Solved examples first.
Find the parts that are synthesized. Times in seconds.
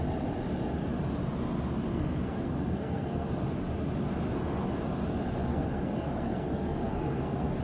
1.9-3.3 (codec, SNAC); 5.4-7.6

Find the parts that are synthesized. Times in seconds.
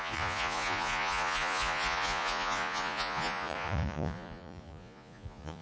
0.0-5.6 (vocoder, Vocos)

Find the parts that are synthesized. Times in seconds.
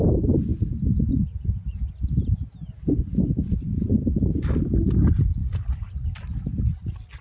5.4-6.4 (vocoder, BigVGAN v2)